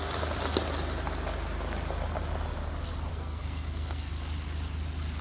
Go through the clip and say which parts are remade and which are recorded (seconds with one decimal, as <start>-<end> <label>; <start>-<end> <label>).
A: 0.0-3.1 recorded; 3.1-4.1 remade; 4.1-5.2 recorded